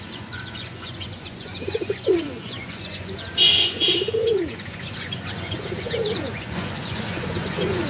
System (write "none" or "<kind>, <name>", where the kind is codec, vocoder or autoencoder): vocoder, Vocos